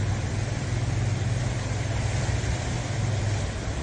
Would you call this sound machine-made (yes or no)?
yes